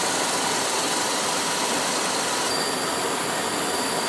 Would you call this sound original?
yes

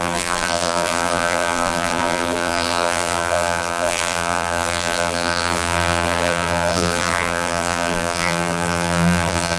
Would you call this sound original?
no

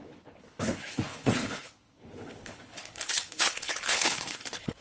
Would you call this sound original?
no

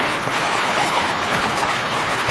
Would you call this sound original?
no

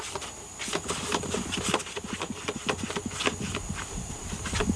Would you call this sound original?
yes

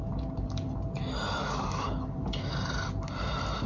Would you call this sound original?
yes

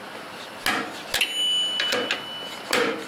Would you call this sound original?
yes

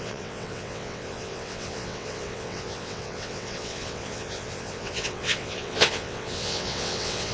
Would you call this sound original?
no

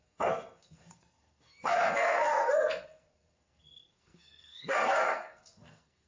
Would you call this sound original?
no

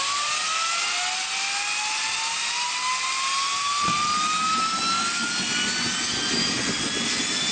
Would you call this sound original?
yes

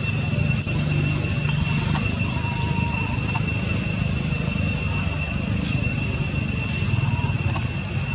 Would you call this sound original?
yes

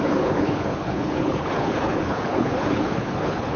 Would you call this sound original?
no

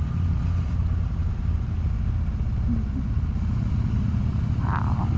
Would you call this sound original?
yes